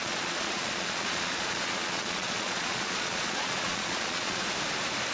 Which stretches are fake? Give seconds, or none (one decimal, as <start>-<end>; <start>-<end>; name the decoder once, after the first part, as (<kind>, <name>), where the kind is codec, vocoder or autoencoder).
0.0-4.4 (vocoder, Vocos)